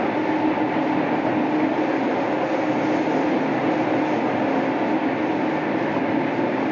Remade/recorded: recorded